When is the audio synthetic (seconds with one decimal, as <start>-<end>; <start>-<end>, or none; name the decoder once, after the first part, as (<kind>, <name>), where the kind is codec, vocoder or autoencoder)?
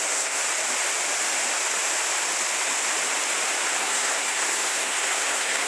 0.0-0.4 (codec, SNAC); 3.8-5.7